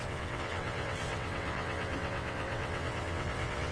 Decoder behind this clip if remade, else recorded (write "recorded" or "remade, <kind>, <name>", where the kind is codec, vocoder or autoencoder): remade, vocoder, WaveNeXt